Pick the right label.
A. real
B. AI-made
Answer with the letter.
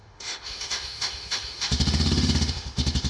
B